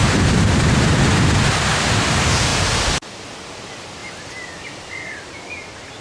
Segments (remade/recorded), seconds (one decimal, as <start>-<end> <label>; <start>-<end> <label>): 0.0-0.9 remade; 0.9-6.0 recorded

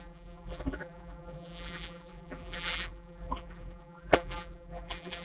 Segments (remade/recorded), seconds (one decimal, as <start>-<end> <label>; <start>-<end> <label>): 0.0-5.2 remade

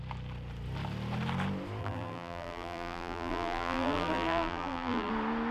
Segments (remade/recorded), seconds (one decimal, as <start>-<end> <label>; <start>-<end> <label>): 0.0-1.8 recorded; 1.8-5.1 remade; 5.1-5.5 recorded

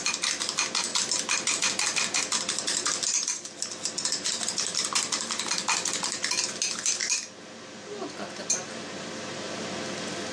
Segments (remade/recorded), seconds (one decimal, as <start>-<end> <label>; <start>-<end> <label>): 0.0-10.3 recorded

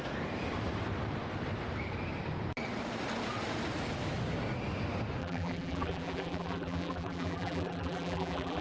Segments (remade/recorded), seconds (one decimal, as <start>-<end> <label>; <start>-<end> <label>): 0.0-5.2 recorded; 5.2-8.6 remade

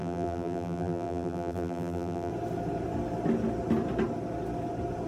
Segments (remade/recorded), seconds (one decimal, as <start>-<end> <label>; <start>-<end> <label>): 0.0-2.3 remade; 2.3-5.1 recorded